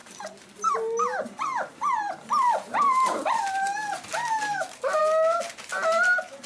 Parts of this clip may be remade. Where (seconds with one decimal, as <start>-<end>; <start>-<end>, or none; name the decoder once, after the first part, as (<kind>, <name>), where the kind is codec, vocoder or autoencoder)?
0.0-0.7 (vocoder, BigVGAN v2); 1.1-5.0

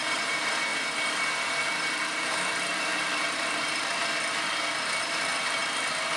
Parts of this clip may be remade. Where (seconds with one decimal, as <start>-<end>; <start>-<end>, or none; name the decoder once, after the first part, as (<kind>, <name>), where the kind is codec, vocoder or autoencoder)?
0.0-0.7 (vocoder, BigVGAN v2); 1.6-4.0; 5.0-6.2

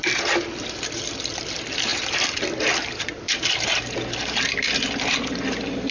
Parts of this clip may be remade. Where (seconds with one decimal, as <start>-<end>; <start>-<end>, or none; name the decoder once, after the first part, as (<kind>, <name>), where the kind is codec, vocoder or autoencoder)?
0.0-5.9 (vocoder, BigVGAN v2)

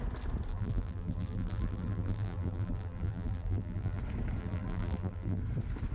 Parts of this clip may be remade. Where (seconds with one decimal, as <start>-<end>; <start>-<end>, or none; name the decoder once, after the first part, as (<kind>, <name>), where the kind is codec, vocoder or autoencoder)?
0.5-4.0 (vocoder, BigVGAN v2); 4.4-5.4

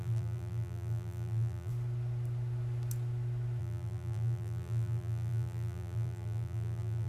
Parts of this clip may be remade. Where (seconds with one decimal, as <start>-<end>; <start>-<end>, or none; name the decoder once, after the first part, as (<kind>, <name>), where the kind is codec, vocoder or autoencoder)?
0.0-1.7 (vocoder, BigVGAN v2); 3.6-7.1

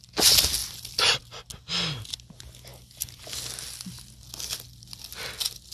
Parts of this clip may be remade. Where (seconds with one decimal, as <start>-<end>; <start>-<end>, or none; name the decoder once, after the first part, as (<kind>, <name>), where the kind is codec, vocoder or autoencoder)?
0.6-1.2 (vocoder, BigVGAN v2)

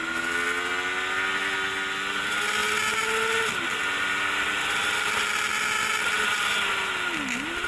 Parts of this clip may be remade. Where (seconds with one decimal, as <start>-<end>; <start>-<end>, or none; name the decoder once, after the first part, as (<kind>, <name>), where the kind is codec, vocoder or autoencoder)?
none